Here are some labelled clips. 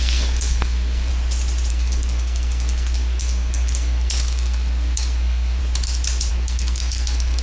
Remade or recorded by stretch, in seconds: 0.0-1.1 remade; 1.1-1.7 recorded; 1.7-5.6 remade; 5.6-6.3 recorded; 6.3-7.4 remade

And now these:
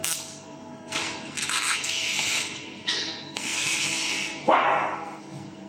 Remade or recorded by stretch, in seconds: 0.0-5.7 remade

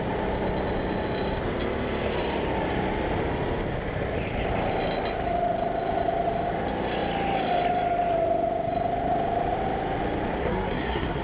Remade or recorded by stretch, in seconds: 0.0-10.4 recorded; 10.4-11.2 remade

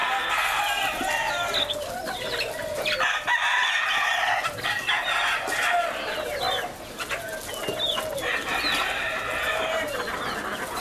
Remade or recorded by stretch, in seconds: 0.0-0.6 remade; 0.6-10.8 recorded

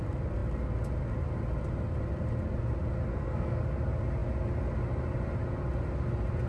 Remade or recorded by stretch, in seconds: 0.0-3.1 recorded; 3.1-3.6 remade; 3.6-6.5 recorded

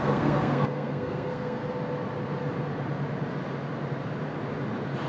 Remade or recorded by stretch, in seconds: 0.0-1.6 remade; 1.6-5.1 recorded

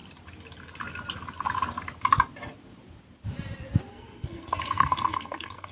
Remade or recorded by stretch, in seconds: 0.0-3.9 recorded; 3.9-5.7 remade

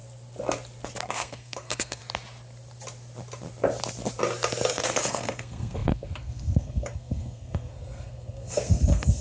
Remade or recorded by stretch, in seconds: 0.0-1.0 recorded; 1.0-2.0 remade; 2.0-4.7 recorded; 4.7-9.2 remade